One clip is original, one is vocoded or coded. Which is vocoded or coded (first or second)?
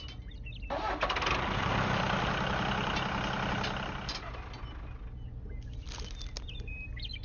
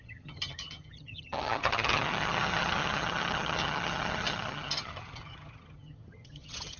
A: second